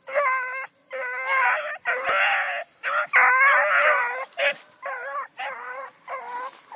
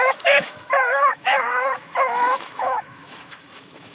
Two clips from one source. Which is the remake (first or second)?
second